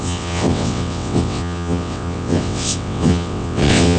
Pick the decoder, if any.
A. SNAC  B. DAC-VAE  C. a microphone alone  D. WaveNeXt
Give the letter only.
D